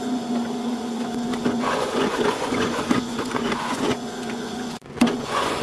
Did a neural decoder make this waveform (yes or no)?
yes